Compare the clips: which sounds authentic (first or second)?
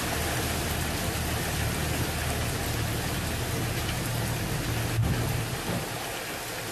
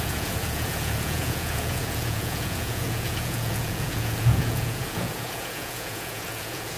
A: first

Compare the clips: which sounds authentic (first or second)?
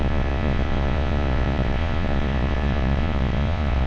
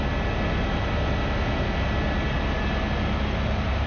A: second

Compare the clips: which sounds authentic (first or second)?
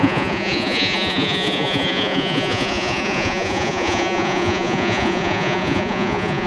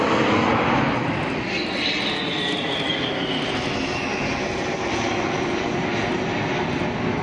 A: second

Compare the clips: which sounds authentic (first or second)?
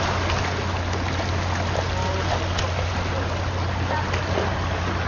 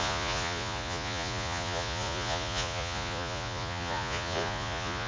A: first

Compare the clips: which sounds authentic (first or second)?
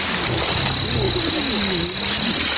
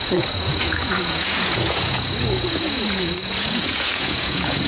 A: first